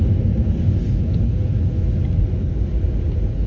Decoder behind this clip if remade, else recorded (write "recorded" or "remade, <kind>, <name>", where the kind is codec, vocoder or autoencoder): recorded